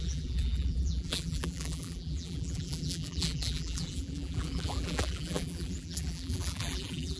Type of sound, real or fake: fake